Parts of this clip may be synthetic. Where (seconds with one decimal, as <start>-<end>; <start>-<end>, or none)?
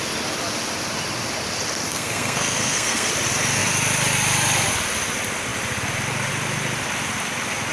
1.9-3.1